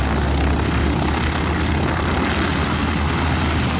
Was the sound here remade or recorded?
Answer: recorded